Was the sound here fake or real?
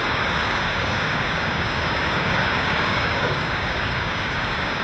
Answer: fake